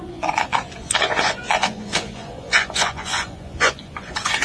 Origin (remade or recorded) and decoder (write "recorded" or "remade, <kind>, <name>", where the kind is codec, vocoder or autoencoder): remade, vocoder, Vocos